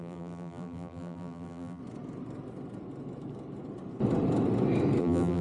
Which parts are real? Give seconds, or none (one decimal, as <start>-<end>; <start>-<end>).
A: 1.8-5.0